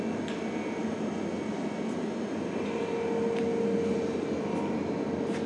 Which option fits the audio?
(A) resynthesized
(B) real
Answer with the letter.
B